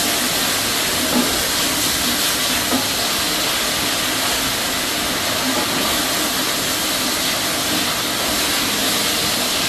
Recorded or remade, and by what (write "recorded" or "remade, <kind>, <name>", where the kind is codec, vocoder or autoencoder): recorded